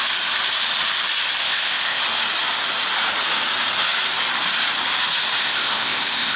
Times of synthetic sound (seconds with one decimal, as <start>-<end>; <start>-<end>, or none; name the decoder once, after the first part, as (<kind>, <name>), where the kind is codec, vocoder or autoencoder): 1.4-2.0 (codec, ZipCodec); 5.4-6.4